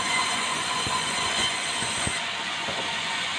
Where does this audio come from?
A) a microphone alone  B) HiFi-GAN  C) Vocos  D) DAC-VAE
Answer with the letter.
C